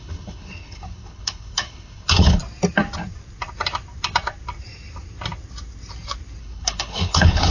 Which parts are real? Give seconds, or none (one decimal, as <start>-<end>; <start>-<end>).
2.4-6.4